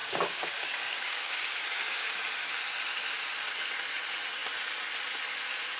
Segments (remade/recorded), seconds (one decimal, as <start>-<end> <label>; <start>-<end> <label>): 0.0-2.1 remade; 2.1-5.8 recorded